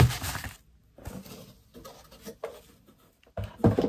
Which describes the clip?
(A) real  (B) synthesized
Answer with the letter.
A